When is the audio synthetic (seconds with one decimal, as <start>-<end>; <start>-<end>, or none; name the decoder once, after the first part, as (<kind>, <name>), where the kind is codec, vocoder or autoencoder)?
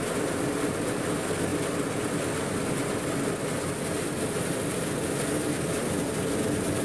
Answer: none